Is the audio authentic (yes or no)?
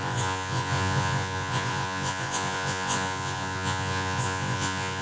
no